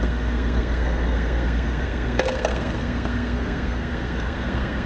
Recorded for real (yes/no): no